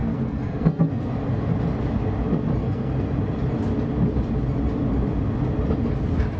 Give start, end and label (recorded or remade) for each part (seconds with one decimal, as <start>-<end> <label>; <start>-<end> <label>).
0.0-1.1 remade; 1.1-2.6 recorded; 2.6-3.1 remade; 3.1-6.4 recorded